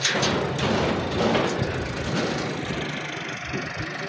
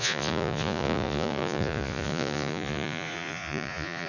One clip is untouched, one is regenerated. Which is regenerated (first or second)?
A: second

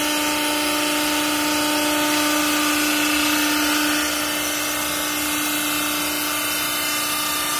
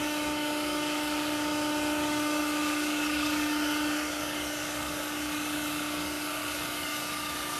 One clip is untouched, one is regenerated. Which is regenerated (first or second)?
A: second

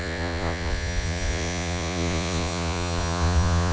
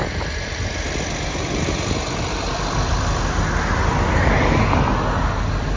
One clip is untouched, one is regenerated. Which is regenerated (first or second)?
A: first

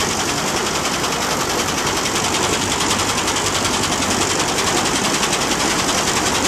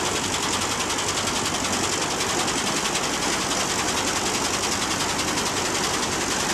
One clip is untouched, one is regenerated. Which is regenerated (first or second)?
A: first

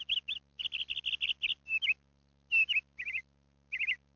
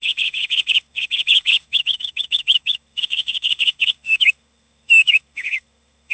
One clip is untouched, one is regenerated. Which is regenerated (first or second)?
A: second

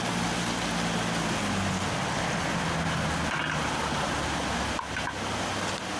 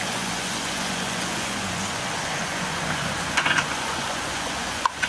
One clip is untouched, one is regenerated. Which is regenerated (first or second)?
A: second